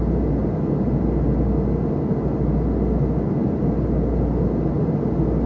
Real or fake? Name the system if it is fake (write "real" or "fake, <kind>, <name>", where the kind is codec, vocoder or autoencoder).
real